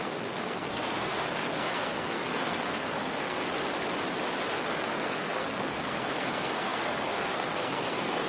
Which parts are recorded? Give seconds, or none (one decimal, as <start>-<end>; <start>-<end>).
3.4-4.5